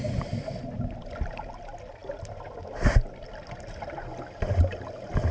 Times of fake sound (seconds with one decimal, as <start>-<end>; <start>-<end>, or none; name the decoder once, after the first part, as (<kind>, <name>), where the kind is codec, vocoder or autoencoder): none